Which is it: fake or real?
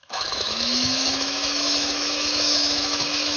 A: fake